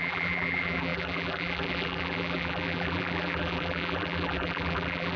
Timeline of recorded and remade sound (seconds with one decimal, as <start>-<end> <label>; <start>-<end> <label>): 0.0-5.2 remade